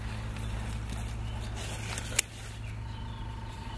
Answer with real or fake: real